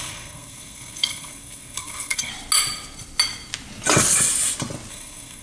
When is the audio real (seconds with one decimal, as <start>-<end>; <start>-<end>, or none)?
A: 2.3-4.9